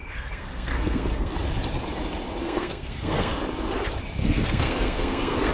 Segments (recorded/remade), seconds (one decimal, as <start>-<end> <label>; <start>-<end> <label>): 0.0-1.3 remade; 1.3-2.4 recorded; 2.4-3.3 remade; 3.3-4.2 recorded; 4.2-5.5 remade